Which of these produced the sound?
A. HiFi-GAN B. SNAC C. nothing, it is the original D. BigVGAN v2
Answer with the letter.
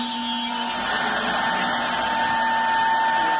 C